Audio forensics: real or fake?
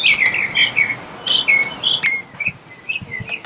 real